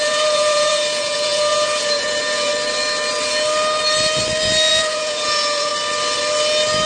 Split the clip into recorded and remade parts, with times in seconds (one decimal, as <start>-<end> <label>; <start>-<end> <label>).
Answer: 0.0-2.5 remade; 2.5-4.7 recorded; 4.7-5.7 remade; 5.7-6.9 recorded